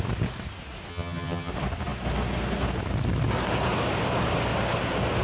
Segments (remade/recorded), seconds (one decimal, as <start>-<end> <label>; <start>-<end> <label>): 0.0-0.9 recorded; 0.9-1.5 remade; 1.5-5.2 recorded